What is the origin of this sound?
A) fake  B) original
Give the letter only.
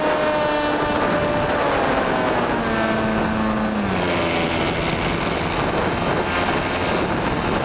B